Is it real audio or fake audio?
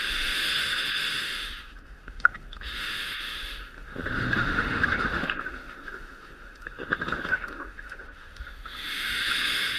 fake